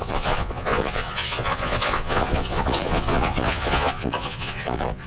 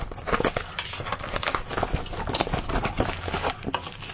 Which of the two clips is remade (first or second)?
first